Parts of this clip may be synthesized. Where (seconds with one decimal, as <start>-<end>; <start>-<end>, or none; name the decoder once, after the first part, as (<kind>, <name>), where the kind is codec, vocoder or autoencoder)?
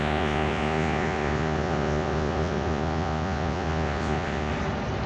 0.0-4.5 (vocoder, Vocos)